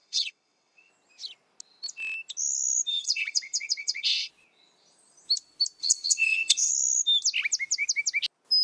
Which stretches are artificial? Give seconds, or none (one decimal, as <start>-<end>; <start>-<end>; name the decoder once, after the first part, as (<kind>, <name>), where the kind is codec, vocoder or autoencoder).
0.0-0.9 (vocoder, WaveNeXt); 2.9-4.3; 5.8-6.7